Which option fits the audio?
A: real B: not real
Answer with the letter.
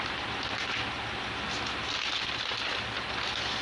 A